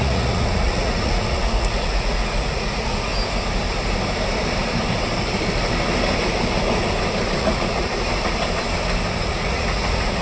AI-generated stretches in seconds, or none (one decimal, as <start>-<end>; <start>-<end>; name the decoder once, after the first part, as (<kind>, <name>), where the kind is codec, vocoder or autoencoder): 0.0-3.1 (vocoder, Vocos); 7.4-7.9; 9.3-10.2